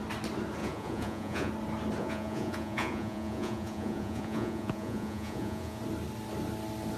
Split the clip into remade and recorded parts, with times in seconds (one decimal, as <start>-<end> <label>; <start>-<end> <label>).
0.0-0.6 recorded; 0.6-1.5 remade; 1.5-2.0 recorded; 2.0-5.8 remade; 5.8-7.0 recorded